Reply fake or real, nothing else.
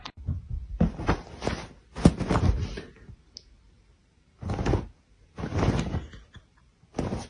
real